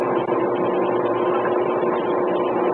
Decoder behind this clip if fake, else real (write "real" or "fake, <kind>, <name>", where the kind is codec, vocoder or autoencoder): real